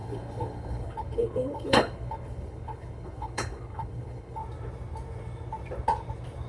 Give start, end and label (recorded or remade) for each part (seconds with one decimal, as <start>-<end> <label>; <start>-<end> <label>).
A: 0.0-4.4 remade; 4.4-6.5 recorded